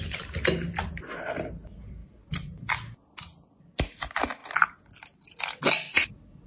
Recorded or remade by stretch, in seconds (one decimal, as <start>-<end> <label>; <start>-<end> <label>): 0.0-6.5 recorded